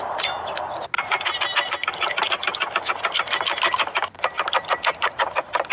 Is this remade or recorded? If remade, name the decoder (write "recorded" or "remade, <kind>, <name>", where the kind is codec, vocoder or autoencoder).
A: recorded